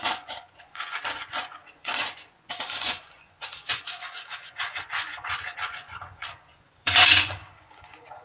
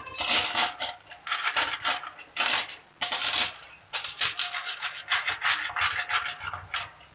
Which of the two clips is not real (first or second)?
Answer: first